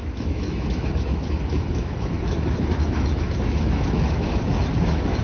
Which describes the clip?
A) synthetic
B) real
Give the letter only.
A